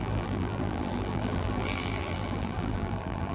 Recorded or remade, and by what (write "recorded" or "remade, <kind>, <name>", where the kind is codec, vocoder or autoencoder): remade, vocoder, BigVGAN v2